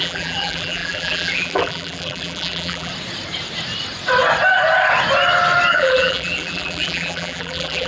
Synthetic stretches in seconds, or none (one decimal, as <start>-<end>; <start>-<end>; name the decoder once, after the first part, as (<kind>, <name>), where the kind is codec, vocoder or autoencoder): 0.0-2.9 (vocoder, BigVGAN v2); 5.7-7.9